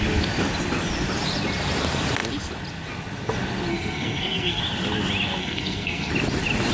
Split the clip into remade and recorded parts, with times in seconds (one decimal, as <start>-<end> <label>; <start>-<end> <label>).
0.0-3.7 recorded; 3.7-4.6 remade; 4.6-5.4 recorded; 5.4-6.1 remade; 6.1-6.7 recorded

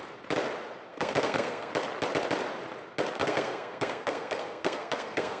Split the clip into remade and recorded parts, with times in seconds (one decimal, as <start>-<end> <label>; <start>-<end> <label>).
0.0-0.9 recorded; 0.9-1.7 remade; 1.7-3.2 recorded; 3.2-5.4 remade